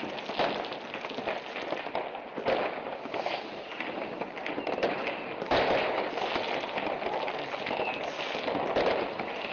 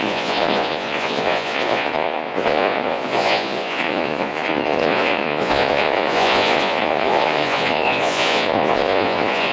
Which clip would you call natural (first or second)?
first